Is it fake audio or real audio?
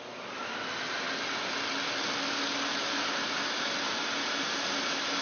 real